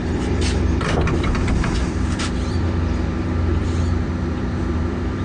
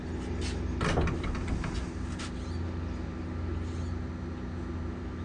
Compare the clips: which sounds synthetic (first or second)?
first